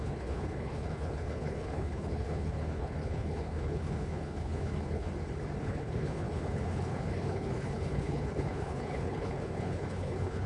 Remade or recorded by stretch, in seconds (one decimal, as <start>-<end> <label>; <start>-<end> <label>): 0.0-5.1 remade; 5.1-5.6 recorded; 5.6-10.5 remade